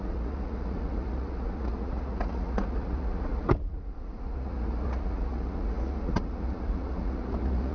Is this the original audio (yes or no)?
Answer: no